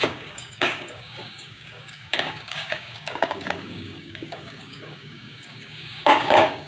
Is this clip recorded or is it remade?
remade